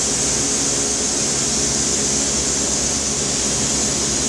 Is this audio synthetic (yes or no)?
no